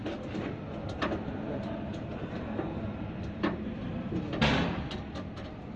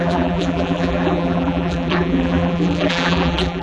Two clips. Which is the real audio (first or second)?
first